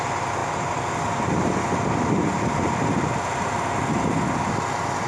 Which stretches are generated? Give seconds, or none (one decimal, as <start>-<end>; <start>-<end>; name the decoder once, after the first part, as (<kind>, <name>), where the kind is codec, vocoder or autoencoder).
none